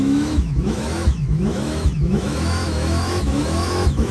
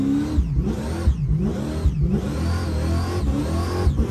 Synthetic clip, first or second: first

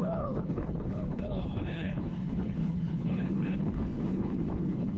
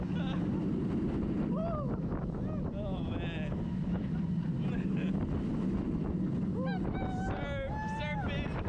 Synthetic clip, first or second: first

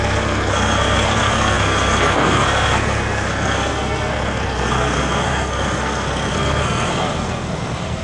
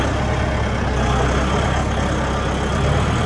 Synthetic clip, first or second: first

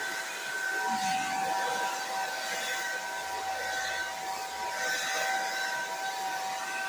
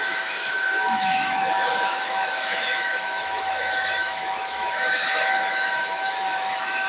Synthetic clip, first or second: second